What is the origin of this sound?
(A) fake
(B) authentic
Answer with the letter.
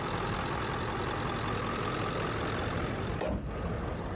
B